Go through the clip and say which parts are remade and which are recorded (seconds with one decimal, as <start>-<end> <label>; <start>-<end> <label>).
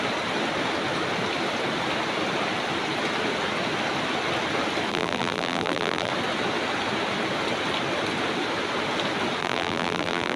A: 0.0-4.9 recorded; 4.9-6.1 remade; 6.1-9.4 recorded; 9.4-10.4 remade